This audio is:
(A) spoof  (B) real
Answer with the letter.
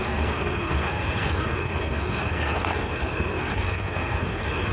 A